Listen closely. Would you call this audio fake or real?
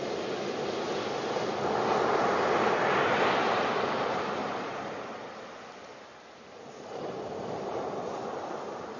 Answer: real